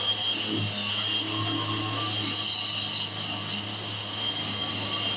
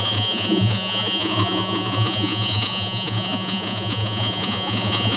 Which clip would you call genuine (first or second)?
first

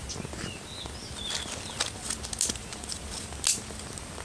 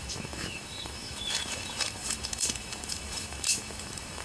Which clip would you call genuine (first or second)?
first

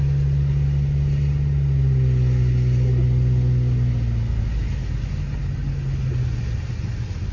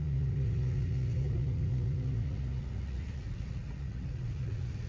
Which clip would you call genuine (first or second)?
first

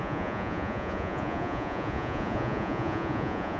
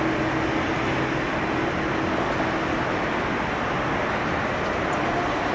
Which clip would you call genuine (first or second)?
second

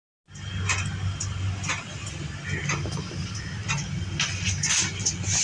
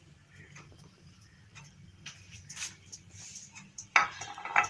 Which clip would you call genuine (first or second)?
first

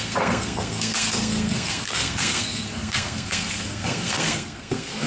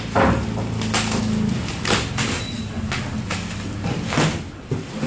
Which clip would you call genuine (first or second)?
second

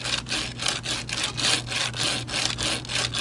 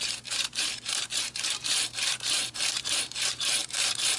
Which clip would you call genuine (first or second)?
first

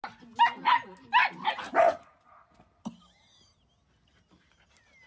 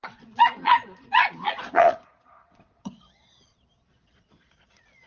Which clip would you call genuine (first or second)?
first